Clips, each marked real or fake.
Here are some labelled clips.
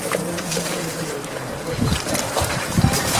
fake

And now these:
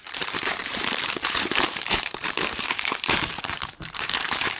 fake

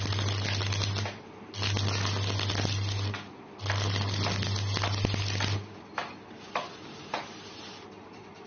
real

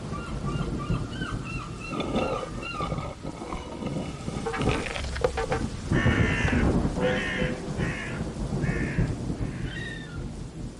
real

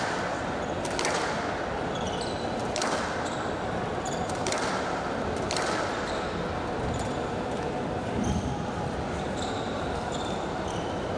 fake